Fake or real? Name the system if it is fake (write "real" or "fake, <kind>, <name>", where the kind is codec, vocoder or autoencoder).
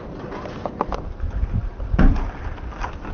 real